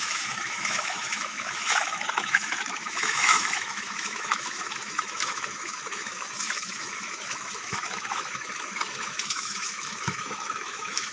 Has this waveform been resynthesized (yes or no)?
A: yes